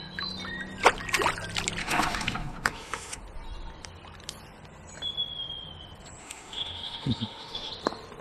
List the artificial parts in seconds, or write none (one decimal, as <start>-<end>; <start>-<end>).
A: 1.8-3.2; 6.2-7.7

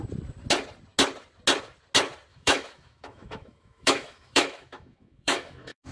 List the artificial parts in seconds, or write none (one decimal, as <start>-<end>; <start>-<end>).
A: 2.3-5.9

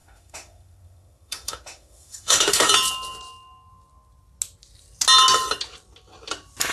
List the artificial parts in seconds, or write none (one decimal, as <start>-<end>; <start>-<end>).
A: 0.0-2.7

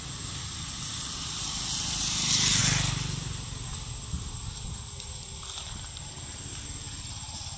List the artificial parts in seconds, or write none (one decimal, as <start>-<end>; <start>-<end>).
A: none

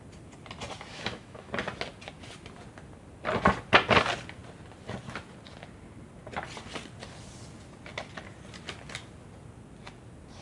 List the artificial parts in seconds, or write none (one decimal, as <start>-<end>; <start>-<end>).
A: 0.9-1.5

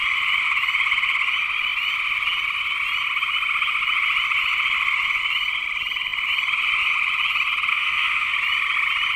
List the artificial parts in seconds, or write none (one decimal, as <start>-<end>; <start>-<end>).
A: 7.7-8.3